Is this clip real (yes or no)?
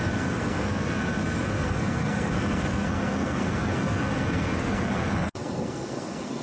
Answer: no